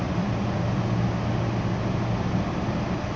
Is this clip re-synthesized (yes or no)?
no